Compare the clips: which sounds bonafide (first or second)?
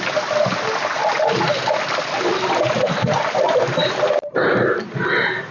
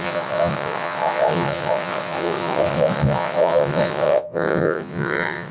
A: first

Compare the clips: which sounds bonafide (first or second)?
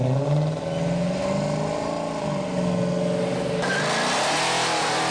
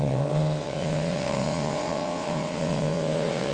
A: first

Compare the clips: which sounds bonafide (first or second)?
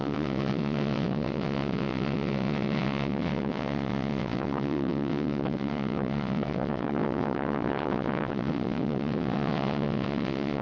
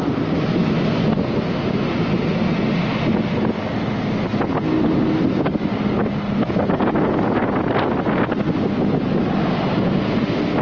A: second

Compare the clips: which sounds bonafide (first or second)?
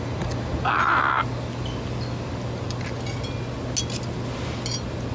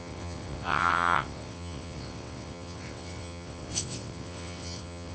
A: first